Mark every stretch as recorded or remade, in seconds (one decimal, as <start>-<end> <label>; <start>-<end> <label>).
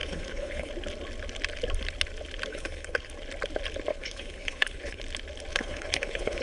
0.0-0.7 remade; 0.7-2.5 recorded; 2.5-3.1 remade; 3.1-3.9 recorded; 3.9-5.0 remade; 5.0-5.5 recorded; 5.5-6.4 remade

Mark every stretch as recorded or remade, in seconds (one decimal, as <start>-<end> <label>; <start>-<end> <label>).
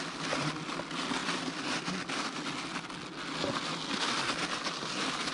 0.0-5.3 recorded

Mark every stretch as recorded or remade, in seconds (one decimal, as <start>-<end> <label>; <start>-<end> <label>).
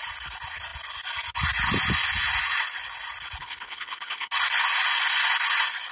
0.0-3.4 recorded; 3.4-4.3 remade; 4.3-5.9 recorded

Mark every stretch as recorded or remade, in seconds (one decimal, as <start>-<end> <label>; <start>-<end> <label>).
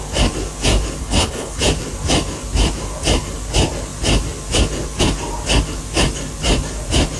0.0-1.0 recorded; 1.0-1.6 remade; 1.6-7.2 recorded